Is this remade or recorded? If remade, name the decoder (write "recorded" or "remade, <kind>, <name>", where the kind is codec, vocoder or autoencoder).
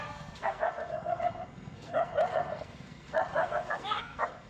remade, codec, SNAC